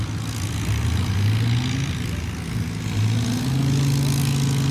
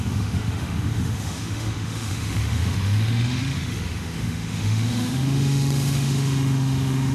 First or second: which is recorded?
first